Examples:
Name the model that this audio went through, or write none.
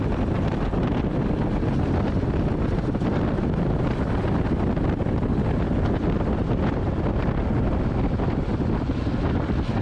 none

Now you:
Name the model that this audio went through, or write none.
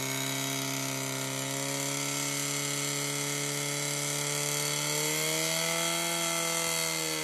none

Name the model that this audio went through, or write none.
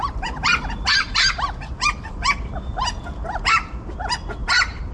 none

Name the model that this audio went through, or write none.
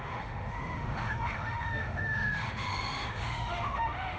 autoencoder, DAC-VAE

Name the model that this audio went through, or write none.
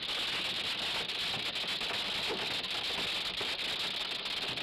none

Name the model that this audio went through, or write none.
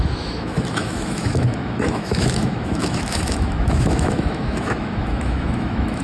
autoencoder, DAC-VAE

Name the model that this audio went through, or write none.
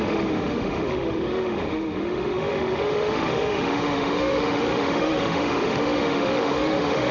autoencoder, DAC-VAE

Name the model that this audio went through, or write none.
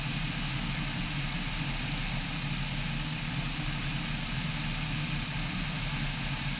none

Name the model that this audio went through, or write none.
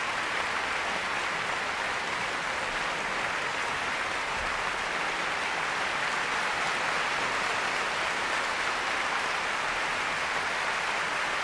none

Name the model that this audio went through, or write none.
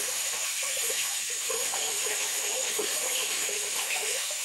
autoencoder, DAC-VAE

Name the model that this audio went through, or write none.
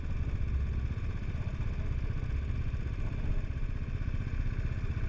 none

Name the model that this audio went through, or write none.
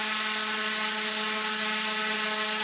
none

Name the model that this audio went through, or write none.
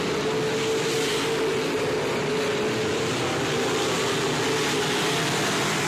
none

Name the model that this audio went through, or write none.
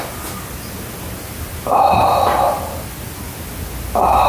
none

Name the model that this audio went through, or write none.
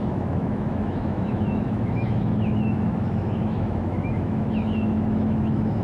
autoencoder, DAC-VAE